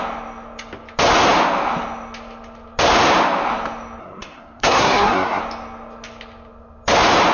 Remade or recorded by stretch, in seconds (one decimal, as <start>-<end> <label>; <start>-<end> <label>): 0.0-4.0 recorded; 4.0-5.4 remade; 5.4-7.3 recorded